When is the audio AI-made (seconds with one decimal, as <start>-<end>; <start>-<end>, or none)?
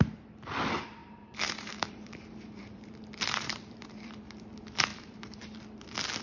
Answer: 1.0-4.1; 4.9-5.6